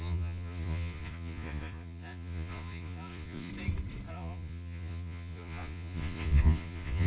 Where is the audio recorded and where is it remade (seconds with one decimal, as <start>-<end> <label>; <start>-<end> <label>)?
0.0-3.5 remade; 3.5-4.1 recorded; 4.1-7.1 remade

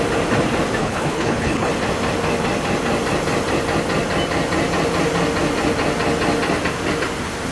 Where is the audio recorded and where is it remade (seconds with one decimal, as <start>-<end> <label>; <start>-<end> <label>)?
0.0-0.8 recorded; 0.8-1.7 remade; 1.7-7.5 recorded

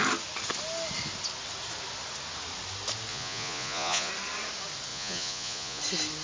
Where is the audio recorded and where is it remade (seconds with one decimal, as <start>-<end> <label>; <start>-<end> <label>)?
0.0-3.1 recorded; 3.1-4.1 remade; 4.1-4.9 recorded; 4.9-5.8 remade; 5.8-6.2 recorded